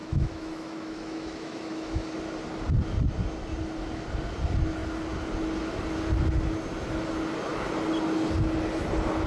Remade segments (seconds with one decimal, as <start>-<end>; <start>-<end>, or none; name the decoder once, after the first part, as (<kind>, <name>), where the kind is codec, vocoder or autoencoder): 0.0-2.1 (autoencoder, DAC-VAE)